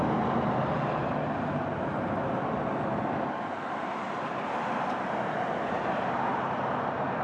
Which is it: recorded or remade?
recorded